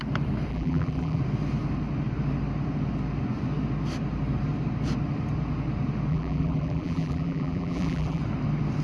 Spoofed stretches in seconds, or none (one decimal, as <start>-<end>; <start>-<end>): 0.5-1.2; 6.1-8.2